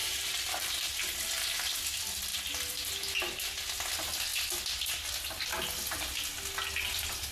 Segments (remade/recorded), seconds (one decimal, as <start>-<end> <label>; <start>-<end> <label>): 0.0-1.0 remade; 1.0-2.3 recorded; 2.3-2.9 remade; 2.9-7.3 recorded